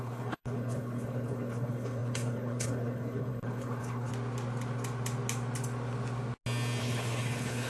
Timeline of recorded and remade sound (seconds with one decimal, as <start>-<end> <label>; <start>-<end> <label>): 0.0-4.1 remade; 4.1-6.8 recorded; 6.8-7.7 remade